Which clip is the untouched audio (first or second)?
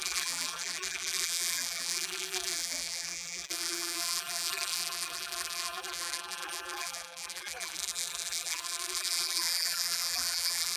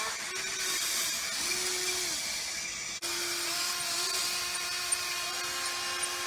second